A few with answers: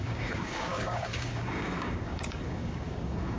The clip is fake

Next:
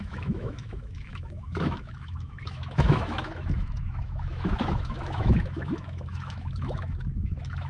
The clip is fake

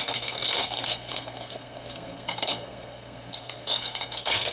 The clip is fake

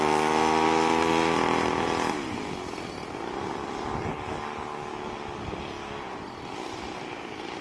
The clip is real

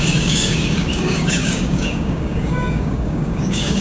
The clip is fake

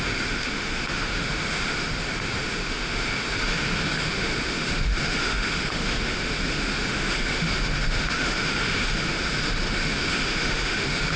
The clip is fake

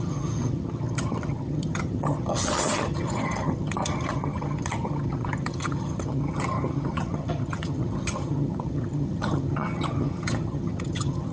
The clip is fake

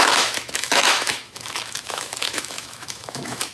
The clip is fake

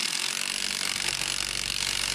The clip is real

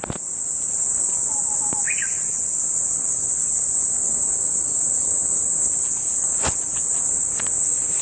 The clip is real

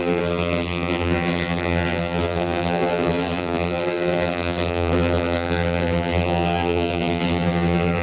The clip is fake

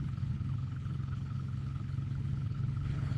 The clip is fake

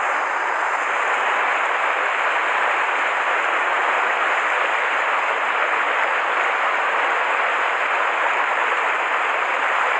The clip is real